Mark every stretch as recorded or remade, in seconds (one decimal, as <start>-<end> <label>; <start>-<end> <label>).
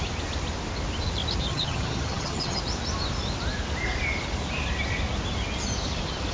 0.0-1.5 recorded; 1.5-2.6 remade; 2.6-6.3 recorded